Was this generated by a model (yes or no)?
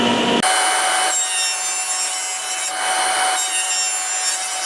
no